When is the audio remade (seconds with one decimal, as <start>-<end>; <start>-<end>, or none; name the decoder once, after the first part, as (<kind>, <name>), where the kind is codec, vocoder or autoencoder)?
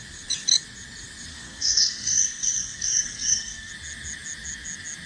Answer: 1.3-3.7 (codec, SNAC)